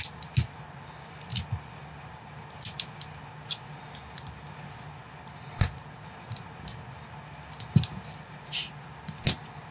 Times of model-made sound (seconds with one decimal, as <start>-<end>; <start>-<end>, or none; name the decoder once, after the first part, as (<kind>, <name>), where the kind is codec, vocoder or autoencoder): none